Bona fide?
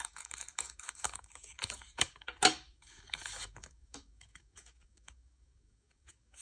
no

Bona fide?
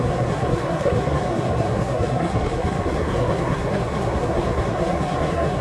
no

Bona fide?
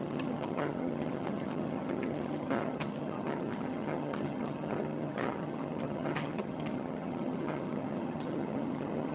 no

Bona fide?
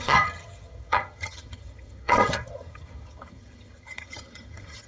no